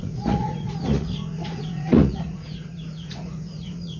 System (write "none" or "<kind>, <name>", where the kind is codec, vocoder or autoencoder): vocoder, Vocos